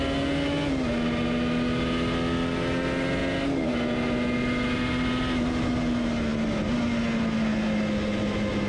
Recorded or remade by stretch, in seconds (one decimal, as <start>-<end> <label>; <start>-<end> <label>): 0.0-8.7 recorded